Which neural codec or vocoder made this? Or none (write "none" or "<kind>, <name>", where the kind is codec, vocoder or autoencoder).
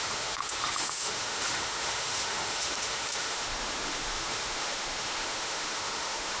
autoencoder, DAC-VAE